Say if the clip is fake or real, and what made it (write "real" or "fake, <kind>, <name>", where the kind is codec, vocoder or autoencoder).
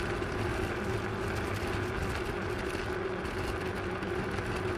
real